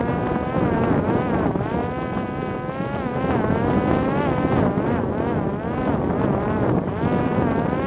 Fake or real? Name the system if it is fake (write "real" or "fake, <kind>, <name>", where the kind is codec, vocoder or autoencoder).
real